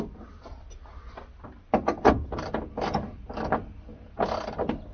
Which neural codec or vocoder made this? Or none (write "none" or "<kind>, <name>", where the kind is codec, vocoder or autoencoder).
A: none